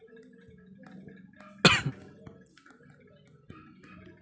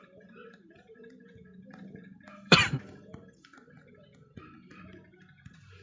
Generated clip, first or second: second